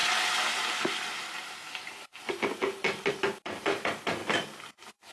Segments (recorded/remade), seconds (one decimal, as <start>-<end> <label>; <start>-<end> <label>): 0.0-5.1 recorded